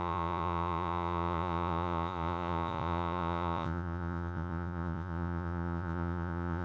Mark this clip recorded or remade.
remade